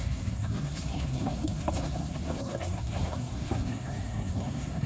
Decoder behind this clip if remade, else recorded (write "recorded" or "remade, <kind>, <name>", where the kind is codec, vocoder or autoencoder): remade, codec, SNAC